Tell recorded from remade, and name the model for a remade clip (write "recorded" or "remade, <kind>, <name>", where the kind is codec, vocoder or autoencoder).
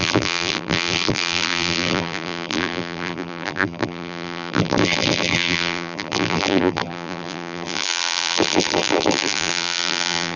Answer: remade, vocoder, BigVGAN v2